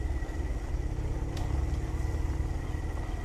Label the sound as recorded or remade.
recorded